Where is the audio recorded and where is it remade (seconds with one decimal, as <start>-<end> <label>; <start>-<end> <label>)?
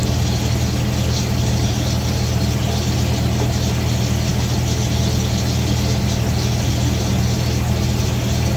0.0-8.6 recorded